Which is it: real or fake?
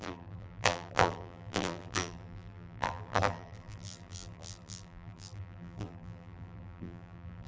fake